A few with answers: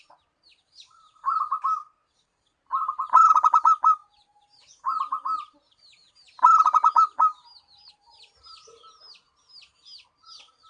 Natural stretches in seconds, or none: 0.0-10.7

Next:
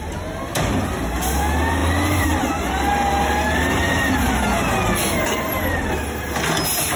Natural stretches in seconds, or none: 0.0-7.0

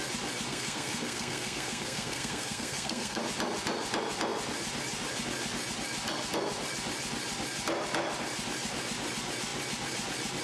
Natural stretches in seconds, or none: 0.0-0.5; 3.2-10.4

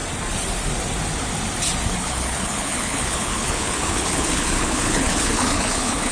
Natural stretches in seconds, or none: 0.0-2.0